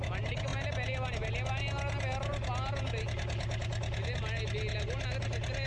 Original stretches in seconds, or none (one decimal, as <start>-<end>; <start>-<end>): 0.0-5.7